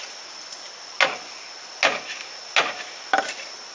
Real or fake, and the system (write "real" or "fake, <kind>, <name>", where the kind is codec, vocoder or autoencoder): real